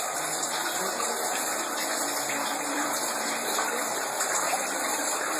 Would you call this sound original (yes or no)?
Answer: no